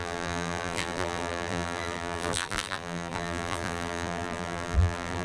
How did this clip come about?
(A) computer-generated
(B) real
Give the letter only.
A